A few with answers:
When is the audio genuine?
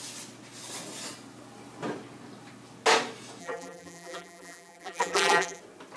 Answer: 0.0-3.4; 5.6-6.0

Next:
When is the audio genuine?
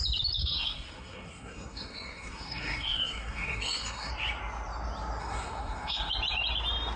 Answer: 0.0-0.4; 4.1-5.2; 6.1-7.0